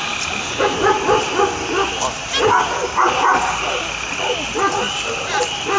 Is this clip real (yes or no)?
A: yes